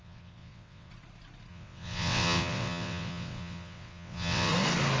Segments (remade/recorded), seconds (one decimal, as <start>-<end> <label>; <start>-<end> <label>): 0.0-0.9 remade; 0.9-1.5 recorded; 1.5-4.5 remade; 4.5-5.0 recorded